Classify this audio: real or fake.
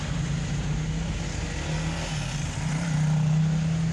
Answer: real